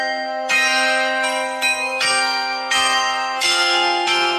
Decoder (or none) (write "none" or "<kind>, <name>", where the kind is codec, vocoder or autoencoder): codec, SNAC